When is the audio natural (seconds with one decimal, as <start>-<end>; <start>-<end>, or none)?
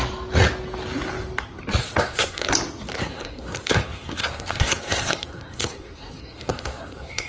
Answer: 0.0-1.8; 2.5-3.0